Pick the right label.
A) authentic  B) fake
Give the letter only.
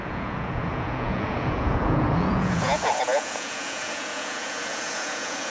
B